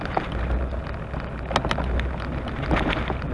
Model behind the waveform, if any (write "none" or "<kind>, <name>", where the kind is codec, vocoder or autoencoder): none